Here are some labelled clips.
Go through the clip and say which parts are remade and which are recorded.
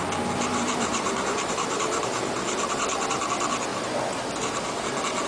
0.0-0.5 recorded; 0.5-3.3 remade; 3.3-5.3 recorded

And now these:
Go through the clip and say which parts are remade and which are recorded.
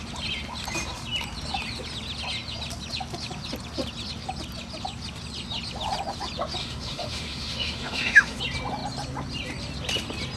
0.0-6.6 recorded; 6.6-8.4 remade; 8.4-10.4 recorded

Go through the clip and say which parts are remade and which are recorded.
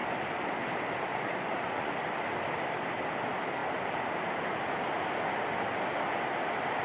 0.0-1.1 recorded; 1.1-1.9 remade; 1.9-6.8 recorded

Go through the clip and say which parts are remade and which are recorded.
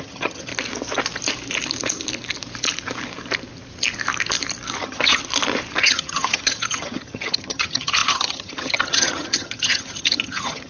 0.0-0.5 remade; 0.5-4.8 recorded; 4.8-5.2 remade; 5.2-5.8 recorded; 5.8-10.7 remade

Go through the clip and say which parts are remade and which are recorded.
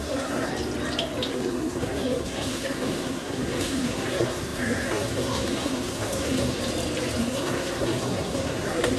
0.0-0.5 remade; 0.5-1.3 recorded; 1.3-6.6 remade; 6.6-7.2 recorded; 7.2-9.0 remade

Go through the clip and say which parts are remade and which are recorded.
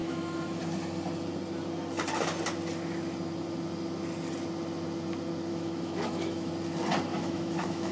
0.0-0.6 remade; 0.6-5.5 recorded; 5.5-6.5 remade; 6.5-7.1 recorded; 7.1-7.9 remade